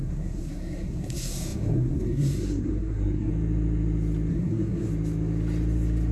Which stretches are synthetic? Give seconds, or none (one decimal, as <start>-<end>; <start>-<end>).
0.0-3.3; 4.3-4.9